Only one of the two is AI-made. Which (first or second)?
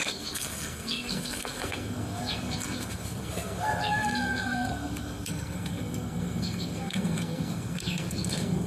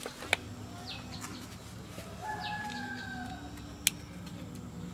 first